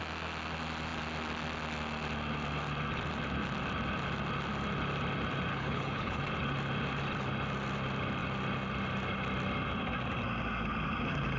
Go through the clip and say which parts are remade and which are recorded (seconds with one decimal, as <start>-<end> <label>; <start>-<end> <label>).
0.0-5.5 recorded; 5.5-6.2 remade; 6.2-11.4 recorded